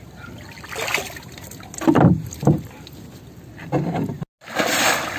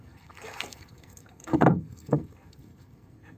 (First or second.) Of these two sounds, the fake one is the second